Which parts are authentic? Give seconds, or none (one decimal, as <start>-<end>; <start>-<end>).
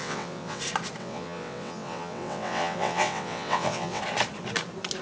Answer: 0.6-1.0; 4.0-5.0